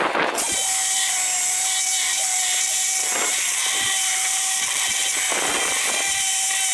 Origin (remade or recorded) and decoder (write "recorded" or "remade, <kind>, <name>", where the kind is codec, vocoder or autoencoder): recorded